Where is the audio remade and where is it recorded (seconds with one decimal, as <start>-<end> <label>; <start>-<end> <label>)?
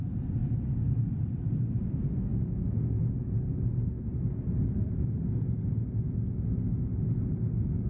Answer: 0.0-7.9 recorded